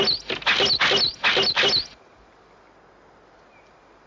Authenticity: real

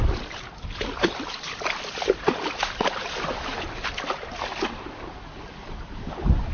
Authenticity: real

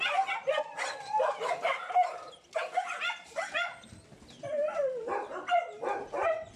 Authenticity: real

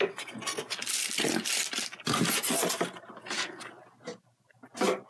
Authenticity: real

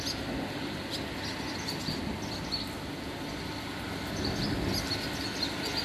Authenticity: real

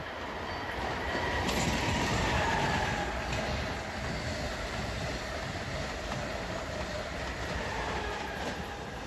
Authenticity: real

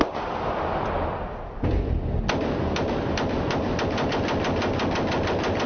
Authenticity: real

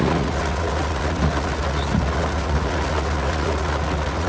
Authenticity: fake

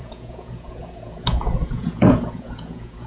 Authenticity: fake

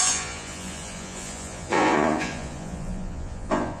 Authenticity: fake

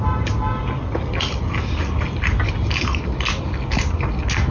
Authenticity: real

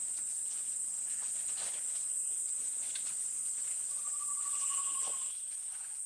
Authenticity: fake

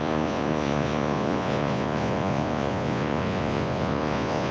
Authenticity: fake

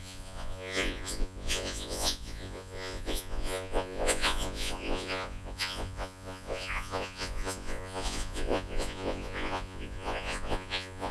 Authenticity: fake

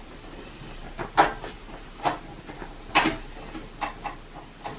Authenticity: real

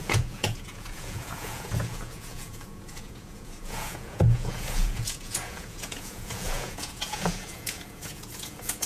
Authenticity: fake